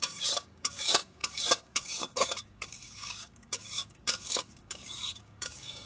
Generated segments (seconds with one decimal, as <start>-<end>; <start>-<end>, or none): 0.0-5.9